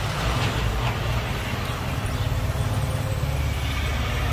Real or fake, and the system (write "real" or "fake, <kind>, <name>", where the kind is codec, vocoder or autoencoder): real